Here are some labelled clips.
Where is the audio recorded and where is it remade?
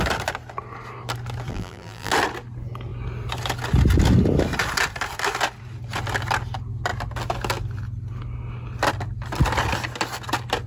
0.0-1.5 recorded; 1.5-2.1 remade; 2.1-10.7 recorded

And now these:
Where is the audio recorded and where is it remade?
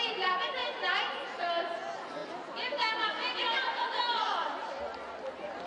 0.0-5.7 recorded